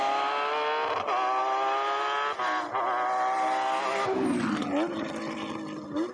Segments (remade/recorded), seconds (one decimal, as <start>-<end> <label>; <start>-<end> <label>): 0.0-6.1 recorded